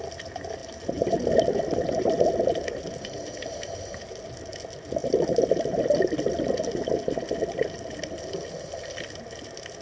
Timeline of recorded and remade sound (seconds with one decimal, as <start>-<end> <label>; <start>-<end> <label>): 0.0-0.6 recorded; 0.6-4.0 remade; 4.0-5.0 recorded; 5.0-5.8 remade; 5.8-9.8 recorded